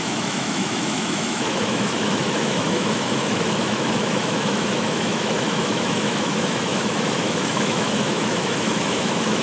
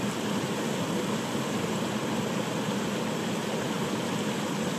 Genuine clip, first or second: second